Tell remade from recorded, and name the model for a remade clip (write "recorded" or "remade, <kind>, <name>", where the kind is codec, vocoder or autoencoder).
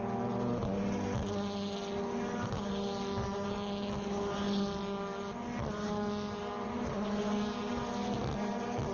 recorded